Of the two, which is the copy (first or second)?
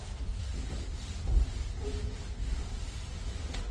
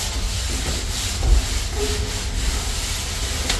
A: first